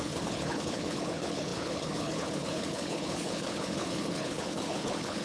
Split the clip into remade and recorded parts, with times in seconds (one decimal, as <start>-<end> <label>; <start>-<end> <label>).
0.0-5.2 remade